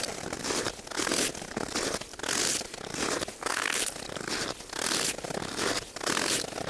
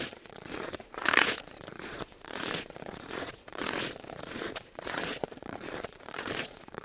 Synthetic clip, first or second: second